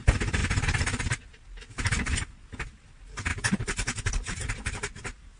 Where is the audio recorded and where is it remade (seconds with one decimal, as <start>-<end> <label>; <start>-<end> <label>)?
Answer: 0.0-3.3 recorded; 3.3-5.4 remade